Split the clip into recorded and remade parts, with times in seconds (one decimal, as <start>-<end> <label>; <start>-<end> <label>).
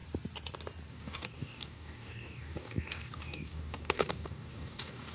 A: 0.0-0.9 recorded; 0.9-5.1 remade